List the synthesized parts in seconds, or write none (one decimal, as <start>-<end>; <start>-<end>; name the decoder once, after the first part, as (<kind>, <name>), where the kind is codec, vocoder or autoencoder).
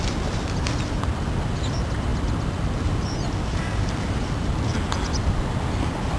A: none